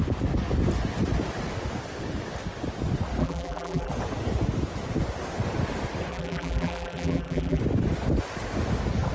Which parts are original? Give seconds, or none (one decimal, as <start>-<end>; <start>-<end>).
0.0-3.2; 3.9-6.1; 7.6-9.1